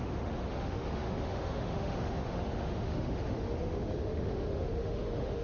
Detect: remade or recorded remade